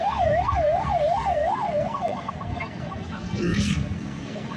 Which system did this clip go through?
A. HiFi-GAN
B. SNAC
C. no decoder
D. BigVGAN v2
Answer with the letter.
B